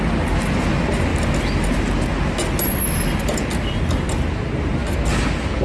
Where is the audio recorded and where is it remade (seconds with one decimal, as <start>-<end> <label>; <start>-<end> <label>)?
0.0-5.6 recorded